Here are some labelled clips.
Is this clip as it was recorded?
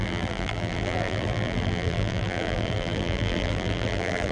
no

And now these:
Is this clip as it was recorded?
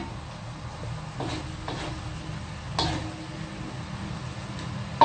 yes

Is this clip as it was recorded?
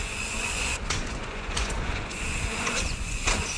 no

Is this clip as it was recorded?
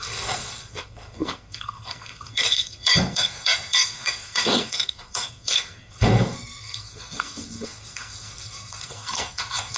no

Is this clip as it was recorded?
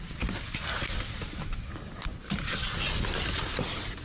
yes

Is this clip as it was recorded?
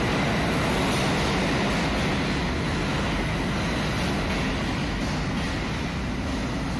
yes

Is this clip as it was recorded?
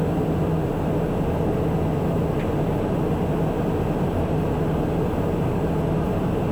yes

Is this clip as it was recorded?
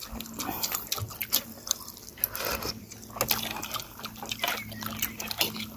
yes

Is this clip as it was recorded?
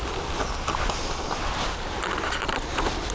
yes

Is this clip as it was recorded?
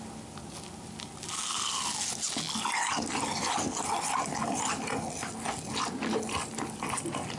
yes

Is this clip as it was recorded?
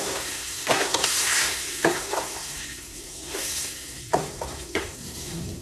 no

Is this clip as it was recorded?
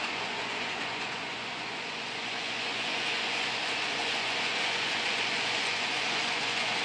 no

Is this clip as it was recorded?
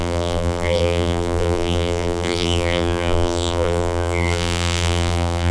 no